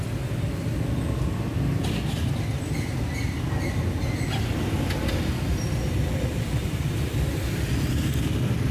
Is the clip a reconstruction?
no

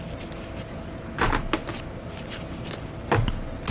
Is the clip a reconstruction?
no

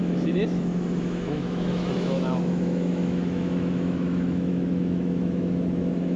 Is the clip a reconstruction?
yes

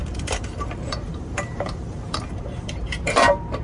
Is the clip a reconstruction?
yes